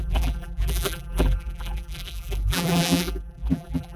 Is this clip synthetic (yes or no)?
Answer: yes